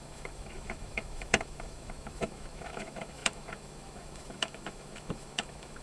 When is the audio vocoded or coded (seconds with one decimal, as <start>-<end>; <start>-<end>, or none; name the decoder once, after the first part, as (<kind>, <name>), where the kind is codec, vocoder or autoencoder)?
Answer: 0.0-5.8 (autoencoder, DAC-VAE)